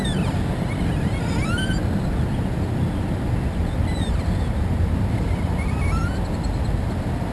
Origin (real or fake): real